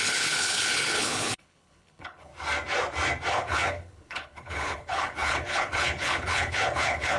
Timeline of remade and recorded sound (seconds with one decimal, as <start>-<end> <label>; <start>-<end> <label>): 0.0-2.3 remade; 2.3-3.3 recorded; 3.3-7.2 remade